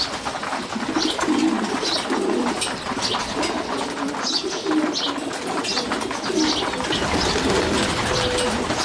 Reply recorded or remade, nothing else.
recorded